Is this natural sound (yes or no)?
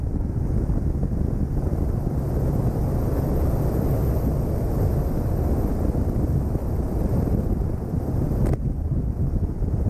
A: yes